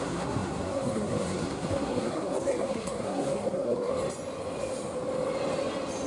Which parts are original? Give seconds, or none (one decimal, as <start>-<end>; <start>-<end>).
3.9-6.1